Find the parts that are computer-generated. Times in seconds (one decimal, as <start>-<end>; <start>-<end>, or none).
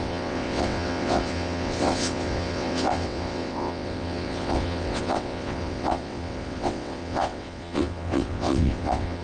0.0-9.2